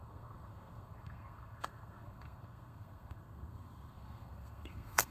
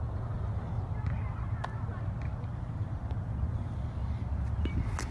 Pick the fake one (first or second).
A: first